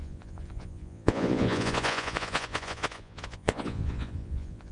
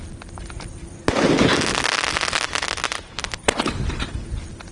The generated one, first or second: first